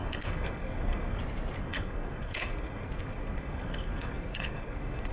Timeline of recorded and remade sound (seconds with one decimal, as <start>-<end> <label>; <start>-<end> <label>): 0.0-1.2 remade; 1.2-1.6 recorded; 1.6-5.1 remade